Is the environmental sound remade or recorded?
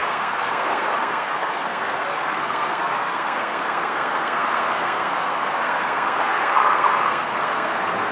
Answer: remade